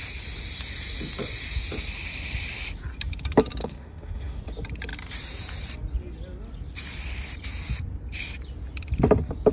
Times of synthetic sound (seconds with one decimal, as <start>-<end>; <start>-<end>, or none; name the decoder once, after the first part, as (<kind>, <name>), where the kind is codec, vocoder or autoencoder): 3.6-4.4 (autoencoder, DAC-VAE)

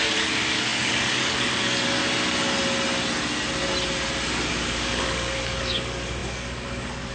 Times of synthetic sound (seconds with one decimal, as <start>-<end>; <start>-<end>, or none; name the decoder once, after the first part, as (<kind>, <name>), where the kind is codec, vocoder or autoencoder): 0.0-2.0 (codec, DAC); 4.5-7.1

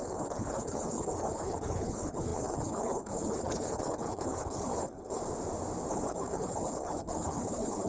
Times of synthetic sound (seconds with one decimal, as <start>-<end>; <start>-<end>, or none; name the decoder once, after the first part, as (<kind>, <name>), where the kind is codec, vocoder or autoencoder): 0.0-5.2 (codec, HILCodec); 5.9-7.9